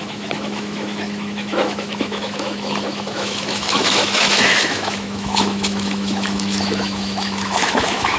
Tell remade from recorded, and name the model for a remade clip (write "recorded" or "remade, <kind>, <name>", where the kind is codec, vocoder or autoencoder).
remade, autoencoder, DAC-VAE